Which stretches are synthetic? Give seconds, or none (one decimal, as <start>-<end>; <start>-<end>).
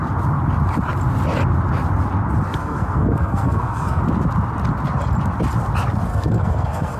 2.6-4.0; 6.1-7.0